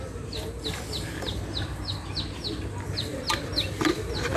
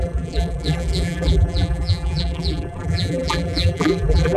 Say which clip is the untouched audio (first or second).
first